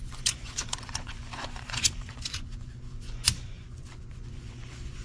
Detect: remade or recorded remade